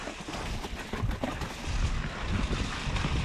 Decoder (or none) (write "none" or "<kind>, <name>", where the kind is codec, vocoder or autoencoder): none